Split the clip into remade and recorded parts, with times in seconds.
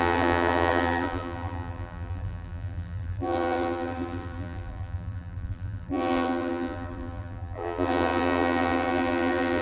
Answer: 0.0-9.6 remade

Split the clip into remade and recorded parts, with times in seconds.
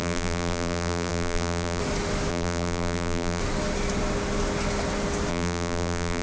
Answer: 0.0-1.8 remade; 1.8-2.3 recorded; 2.3-3.4 remade; 3.4-5.3 recorded; 5.3-6.2 remade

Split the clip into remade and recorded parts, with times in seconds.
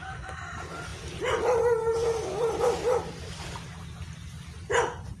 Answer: 0.0-5.2 recorded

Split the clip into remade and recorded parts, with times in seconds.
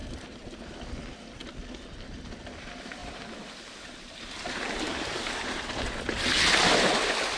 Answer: 0.0-0.6 remade; 0.6-3.0 recorded; 3.0-6.2 remade; 6.2-7.4 recorded